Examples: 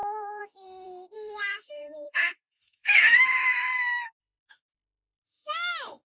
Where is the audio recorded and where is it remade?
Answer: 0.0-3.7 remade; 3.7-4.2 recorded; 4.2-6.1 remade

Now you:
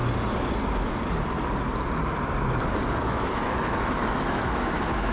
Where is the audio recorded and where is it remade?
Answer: 0.0-3.0 recorded; 3.0-5.1 remade

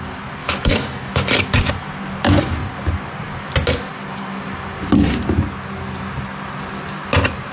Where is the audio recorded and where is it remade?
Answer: 0.0-0.4 recorded; 0.4-1.2 remade; 1.2-7.5 recorded